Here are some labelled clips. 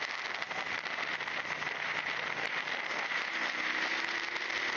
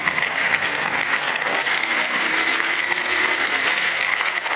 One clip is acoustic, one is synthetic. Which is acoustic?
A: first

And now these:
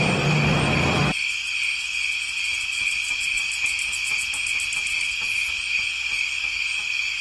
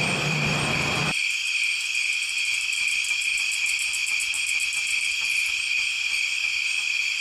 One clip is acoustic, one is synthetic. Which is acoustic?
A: first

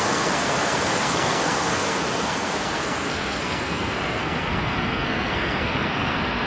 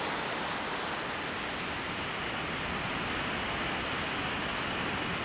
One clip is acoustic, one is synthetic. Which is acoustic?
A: second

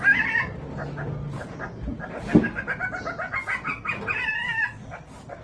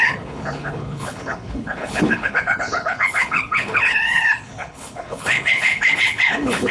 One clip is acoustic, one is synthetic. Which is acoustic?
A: first